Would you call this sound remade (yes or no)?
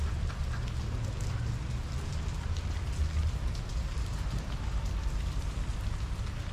no